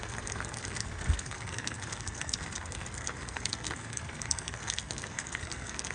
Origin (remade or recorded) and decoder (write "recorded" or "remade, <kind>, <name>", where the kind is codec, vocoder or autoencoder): remade, codec, SNAC